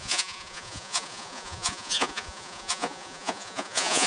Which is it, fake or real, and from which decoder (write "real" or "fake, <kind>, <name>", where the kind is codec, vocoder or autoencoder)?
fake, vocoder, Vocos